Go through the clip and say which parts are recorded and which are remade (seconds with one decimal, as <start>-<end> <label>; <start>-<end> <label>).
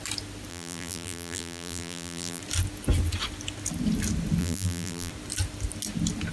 0.0-0.5 recorded; 0.5-2.4 remade; 2.4-4.4 recorded; 4.4-5.1 remade; 5.1-6.3 recorded